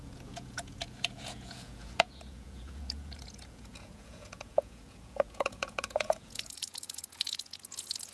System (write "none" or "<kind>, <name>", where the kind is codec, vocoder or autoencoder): vocoder, Vocos